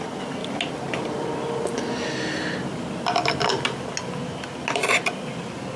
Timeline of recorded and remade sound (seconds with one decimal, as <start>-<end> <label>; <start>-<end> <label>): 0.0-5.8 recorded

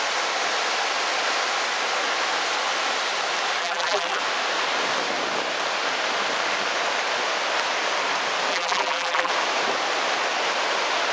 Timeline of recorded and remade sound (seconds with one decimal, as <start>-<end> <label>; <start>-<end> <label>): 0.0-3.6 recorded; 3.6-4.2 remade; 4.2-8.5 recorded; 8.5-9.3 remade; 9.3-11.1 recorded

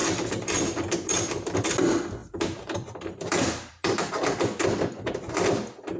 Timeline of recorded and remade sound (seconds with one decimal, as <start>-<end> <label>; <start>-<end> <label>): 0.0-1.3 remade; 1.3-2.2 recorded; 2.2-4.1 remade; 4.1-6.0 recorded

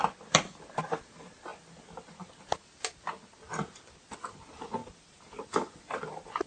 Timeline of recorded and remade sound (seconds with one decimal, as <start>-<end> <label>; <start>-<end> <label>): 0.0-6.5 recorded